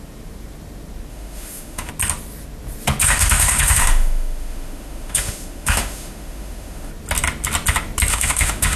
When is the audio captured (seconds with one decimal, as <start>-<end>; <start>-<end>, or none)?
0.0-1.1; 1.9-3.0; 6.9-8.1

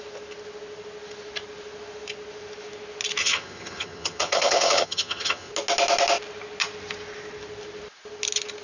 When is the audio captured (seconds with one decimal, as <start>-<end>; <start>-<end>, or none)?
0.0-3.2; 5.5-8.6

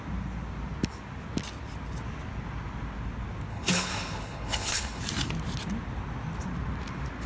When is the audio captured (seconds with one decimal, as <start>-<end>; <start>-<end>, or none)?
0.0-3.5; 5.0-7.3

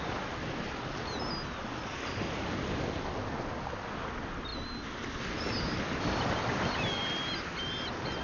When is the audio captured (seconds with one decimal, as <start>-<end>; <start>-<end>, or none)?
0.0-8.2

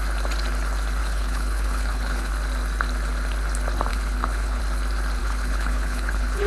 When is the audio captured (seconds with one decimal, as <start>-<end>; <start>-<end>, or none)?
0.0-1.0; 2.3-3.9; 4.6-5.2

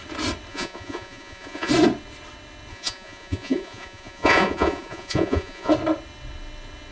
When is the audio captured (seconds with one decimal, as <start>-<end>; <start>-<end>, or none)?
0.0-0.5; 1.7-2.7; 5.7-6.9

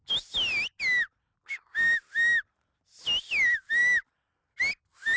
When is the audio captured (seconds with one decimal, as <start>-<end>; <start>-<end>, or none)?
0.0-5.2